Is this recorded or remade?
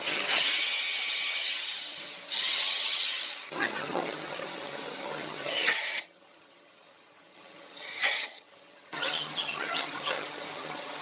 remade